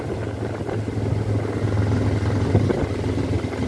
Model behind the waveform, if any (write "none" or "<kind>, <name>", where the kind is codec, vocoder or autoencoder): none